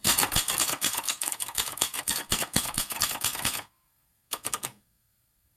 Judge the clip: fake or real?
fake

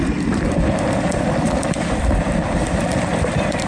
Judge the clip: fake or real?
fake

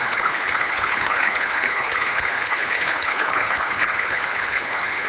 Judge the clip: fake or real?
fake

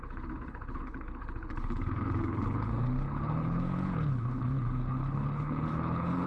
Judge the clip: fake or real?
fake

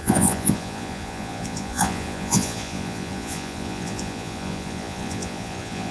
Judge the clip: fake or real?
fake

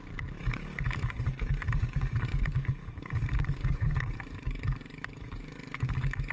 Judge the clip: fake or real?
fake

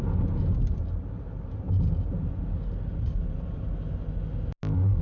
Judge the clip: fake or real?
real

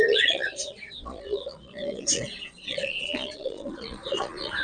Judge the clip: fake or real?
fake